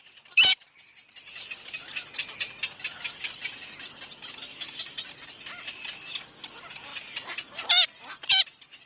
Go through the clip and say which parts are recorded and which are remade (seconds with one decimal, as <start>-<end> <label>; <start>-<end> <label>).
0.0-8.9 recorded